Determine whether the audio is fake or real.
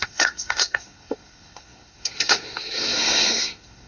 fake